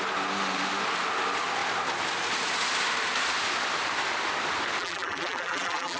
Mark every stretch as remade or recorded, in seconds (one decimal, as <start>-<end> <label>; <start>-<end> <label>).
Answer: 0.0-4.8 recorded; 4.8-6.0 remade